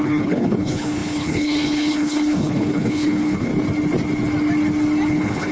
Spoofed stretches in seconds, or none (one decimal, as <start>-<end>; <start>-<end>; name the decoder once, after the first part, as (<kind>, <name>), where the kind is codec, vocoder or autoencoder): 0.0-3.5 (codec, HILCodec); 5.1-5.5